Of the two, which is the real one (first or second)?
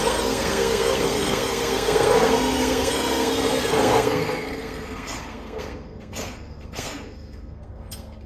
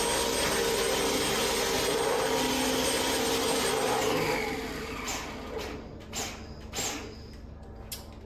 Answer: second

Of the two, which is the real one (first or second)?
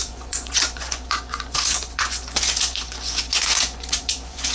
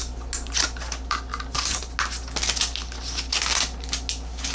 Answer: second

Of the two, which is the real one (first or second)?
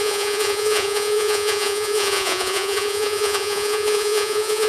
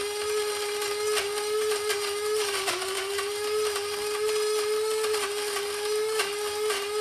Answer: second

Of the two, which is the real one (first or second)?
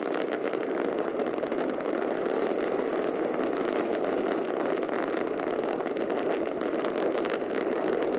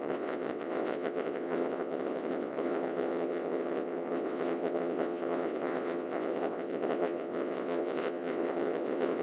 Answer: first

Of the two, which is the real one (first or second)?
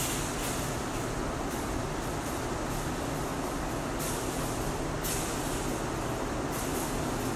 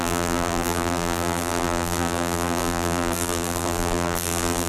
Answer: first